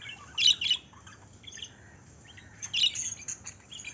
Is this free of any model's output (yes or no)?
yes